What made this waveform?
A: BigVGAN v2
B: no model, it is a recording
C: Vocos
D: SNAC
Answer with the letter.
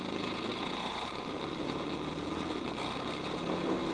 C